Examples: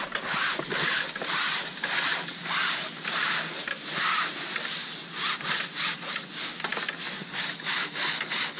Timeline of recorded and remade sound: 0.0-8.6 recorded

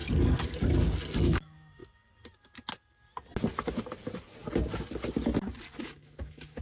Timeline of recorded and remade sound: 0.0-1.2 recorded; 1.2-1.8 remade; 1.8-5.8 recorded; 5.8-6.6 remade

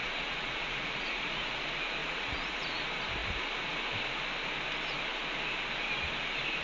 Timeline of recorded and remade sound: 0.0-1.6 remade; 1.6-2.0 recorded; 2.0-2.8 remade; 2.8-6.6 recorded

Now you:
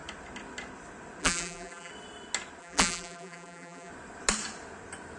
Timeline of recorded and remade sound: 0.0-1.2 recorded; 1.2-1.9 remade; 1.9-2.6 recorded; 2.6-3.9 remade; 3.9-5.2 recorded